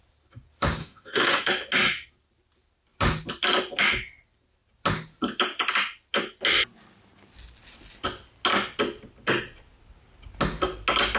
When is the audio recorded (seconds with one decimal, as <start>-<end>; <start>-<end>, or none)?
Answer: 0.0-0.8; 1.5-11.2